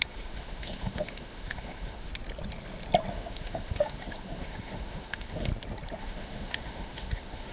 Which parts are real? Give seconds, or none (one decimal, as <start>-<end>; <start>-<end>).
2.1-3.1; 5.5-6.0